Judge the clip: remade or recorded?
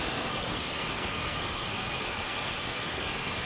remade